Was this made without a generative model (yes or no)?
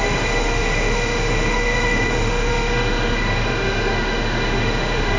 no